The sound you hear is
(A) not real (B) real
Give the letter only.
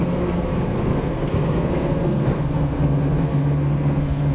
A